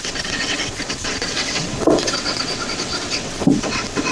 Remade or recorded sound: remade